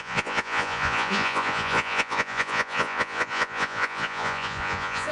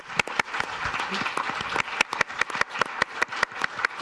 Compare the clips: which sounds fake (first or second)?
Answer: first